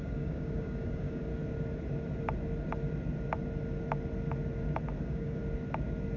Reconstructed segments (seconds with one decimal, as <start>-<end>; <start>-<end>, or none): 0.0-1.3; 5.0-5.4